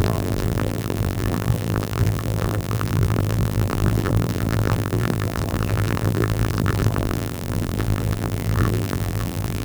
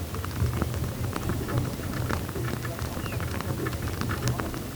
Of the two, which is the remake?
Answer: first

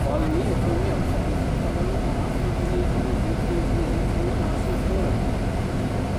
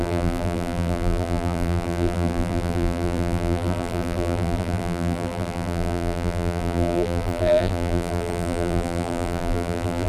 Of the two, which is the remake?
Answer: second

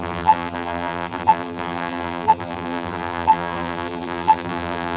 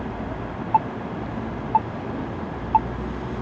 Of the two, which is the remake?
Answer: first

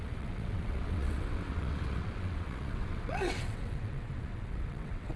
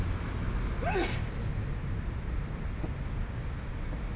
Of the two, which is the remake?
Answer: first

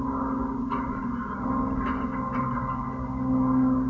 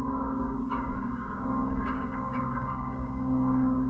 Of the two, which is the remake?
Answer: second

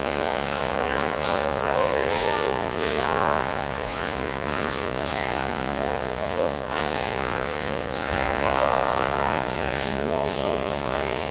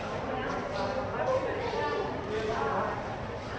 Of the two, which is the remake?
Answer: first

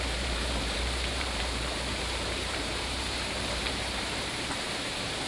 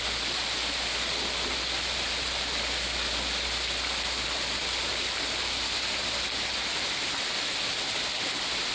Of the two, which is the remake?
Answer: first